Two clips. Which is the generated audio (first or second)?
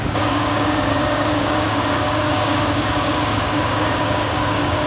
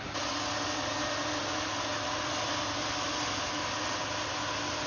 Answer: first